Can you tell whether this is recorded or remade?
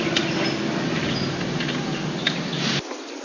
recorded